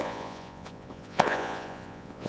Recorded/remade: remade